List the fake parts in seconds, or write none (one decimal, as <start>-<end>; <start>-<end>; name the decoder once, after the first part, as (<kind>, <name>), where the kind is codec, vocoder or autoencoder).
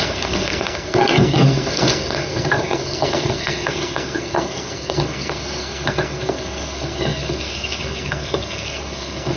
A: 0.0-9.4 (codec, SNAC)